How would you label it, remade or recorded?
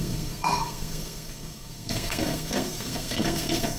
remade